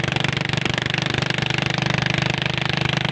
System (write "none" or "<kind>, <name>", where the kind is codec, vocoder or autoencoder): none